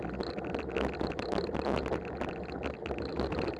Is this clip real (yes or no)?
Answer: yes